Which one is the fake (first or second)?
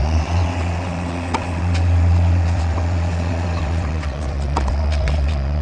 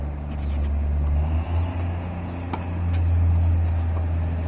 first